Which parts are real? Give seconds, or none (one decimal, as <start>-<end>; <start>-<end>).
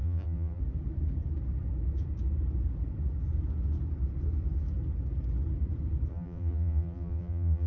0.6-6.1